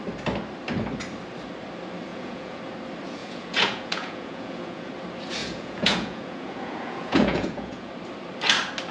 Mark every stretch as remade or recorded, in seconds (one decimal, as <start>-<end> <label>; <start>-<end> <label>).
0.0-2.1 recorded; 2.1-2.6 remade; 2.6-3.2 recorded; 3.2-4.9 remade; 4.9-5.4 recorded; 5.4-7.9 remade; 7.9-8.9 recorded